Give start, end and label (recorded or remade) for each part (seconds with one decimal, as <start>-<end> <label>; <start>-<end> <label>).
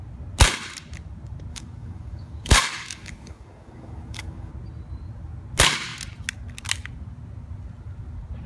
0.0-1.5 recorded; 1.5-4.5 remade; 4.5-8.5 recorded